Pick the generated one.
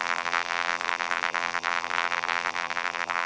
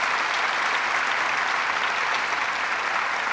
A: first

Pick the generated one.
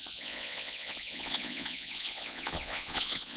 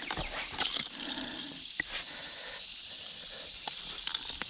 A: first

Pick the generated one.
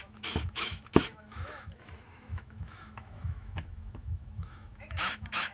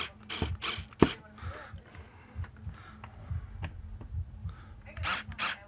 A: first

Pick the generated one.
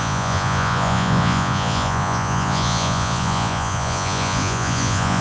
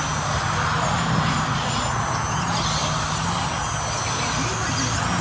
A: first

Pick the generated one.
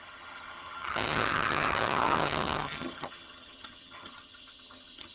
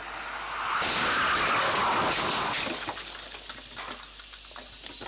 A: first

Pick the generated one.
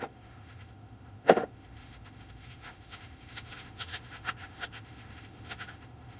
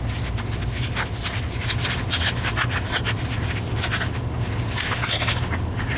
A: first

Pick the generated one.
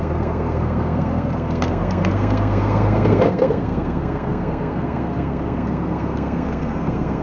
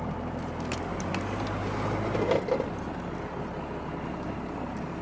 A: first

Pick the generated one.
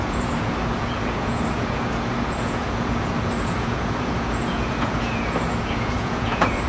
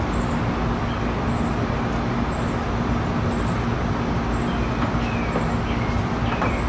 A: first